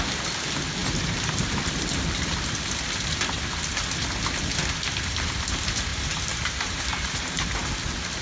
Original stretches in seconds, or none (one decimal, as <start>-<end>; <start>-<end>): 0.0-0.8; 1.6-5.9; 7.5-8.2

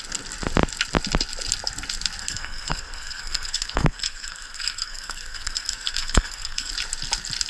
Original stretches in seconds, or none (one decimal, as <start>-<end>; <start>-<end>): 0.0-2.2; 6.7-7.5

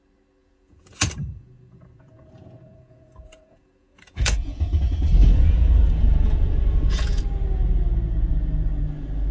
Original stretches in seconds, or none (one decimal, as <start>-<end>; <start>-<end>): 0.0-0.4; 4.8-5.2; 7.2-9.3

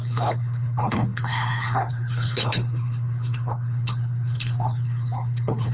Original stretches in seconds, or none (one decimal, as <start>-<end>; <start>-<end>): none

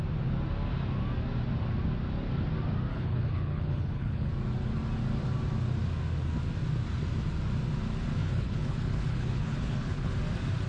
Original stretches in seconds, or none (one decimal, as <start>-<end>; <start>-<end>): 0.0-2.9; 4.3-8.2; 10.1-10.7